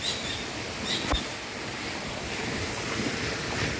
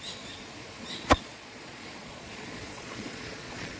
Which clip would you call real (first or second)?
first